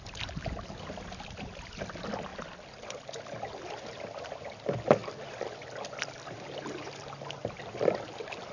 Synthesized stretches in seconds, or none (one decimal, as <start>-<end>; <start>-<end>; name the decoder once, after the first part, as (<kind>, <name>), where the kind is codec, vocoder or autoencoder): none